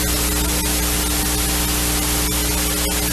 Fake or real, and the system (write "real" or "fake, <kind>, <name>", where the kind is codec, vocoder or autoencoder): real